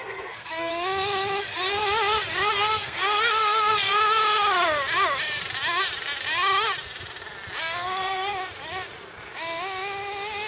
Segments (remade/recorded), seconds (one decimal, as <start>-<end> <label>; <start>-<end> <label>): 0.0-0.7 remade; 0.7-1.4 recorded; 1.4-1.8 remade; 1.8-2.5 recorded; 2.5-3.9 remade; 3.9-7.6 recorded; 7.6-8.3 remade; 8.3-10.5 recorded